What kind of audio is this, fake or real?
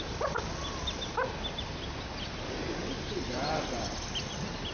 real